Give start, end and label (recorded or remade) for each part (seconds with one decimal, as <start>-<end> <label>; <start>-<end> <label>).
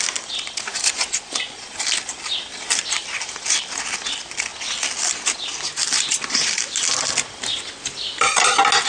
0.0-0.7 recorded; 0.7-1.8 remade; 1.8-8.9 recorded